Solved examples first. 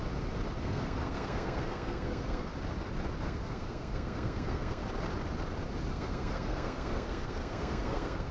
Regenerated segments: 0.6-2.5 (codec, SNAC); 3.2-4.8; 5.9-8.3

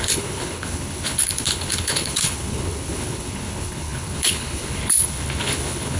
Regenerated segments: 0.0-6.0 (codec, HILCodec)

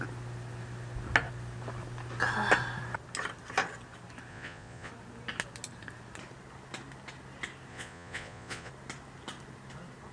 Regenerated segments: 4.3-4.9 (vocoder, Vocos); 7.7-8.7

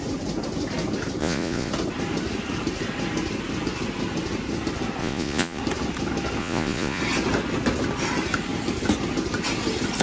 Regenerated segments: 1.2-1.7 (vocoder, Vocos); 5.0-5.6; 6.4-7.0